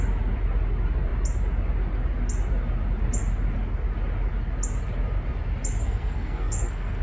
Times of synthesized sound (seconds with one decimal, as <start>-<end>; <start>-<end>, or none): 5.8-7.0